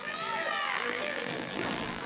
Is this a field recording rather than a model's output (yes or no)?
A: no